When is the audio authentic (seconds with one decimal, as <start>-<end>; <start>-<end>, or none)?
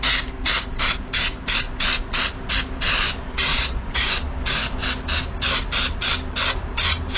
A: 0.0-3.5; 4.2-7.2